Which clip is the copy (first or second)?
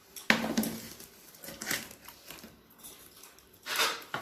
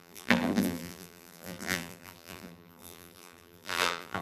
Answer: second